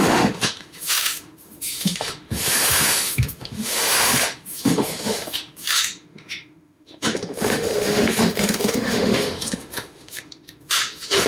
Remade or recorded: remade